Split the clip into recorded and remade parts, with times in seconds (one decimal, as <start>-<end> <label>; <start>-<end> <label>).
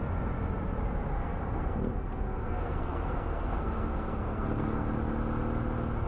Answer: 0.0-1.2 recorded; 1.2-4.9 remade; 4.9-6.1 recorded